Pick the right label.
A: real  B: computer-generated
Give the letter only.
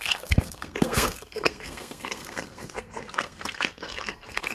B